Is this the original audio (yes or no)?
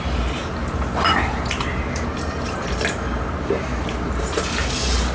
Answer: no